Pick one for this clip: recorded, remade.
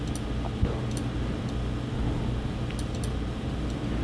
recorded